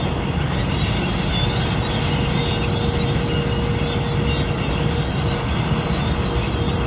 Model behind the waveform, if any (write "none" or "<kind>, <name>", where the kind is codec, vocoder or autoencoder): none